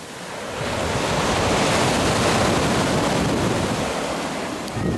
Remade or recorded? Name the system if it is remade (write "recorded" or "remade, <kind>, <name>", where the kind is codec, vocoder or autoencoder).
recorded